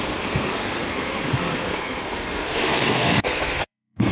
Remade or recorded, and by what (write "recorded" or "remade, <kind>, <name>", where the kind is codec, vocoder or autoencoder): remade, codec, SNAC